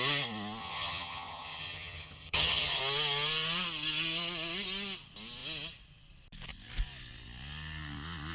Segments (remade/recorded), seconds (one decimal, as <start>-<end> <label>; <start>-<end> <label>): 0.0-0.6 recorded; 0.6-2.8 remade; 2.8-8.3 recorded

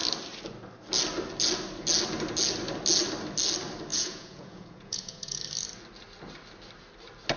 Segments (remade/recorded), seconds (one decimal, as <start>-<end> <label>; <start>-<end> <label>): 0.0-3.9 recorded; 3.9-5.4 remade; 5.4-7.4 recorded

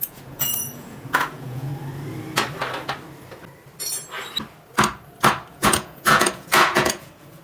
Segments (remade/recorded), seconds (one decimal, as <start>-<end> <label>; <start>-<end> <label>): 0.0-1.7 remade; 1.7-5.5 recorded; 5.5-7.4 remade